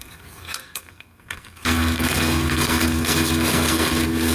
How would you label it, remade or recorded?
remade